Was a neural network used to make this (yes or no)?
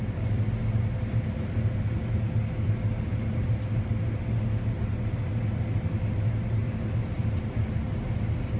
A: no